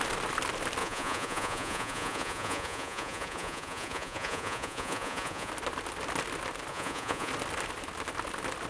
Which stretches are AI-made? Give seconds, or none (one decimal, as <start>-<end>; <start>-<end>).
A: 0.8-5.5; 6.7-7.3